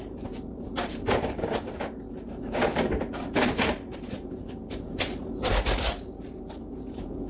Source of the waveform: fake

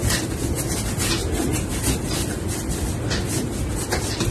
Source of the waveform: real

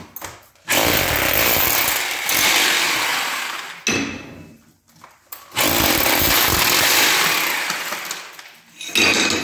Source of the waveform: real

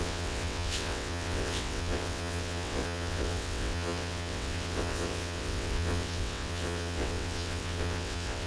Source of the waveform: fake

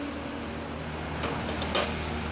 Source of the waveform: real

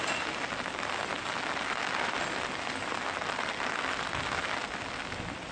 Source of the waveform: real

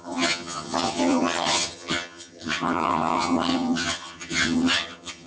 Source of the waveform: fake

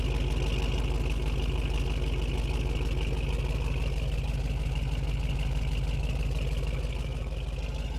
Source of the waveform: real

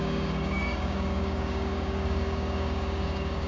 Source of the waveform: fake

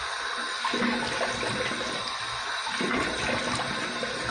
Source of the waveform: real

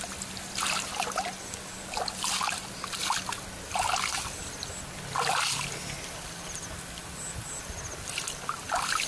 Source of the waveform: real